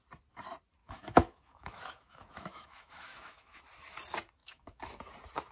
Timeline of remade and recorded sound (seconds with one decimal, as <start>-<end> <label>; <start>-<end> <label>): 0.0-0.8 recorded; 0.8-3.6 remade; 3.6-4.4 recorded; 4.4-5.0 remade; 5.0-5.5 recorded